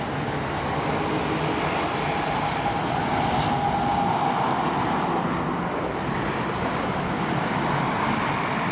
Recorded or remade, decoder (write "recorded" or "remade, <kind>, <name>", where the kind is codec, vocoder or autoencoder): recorded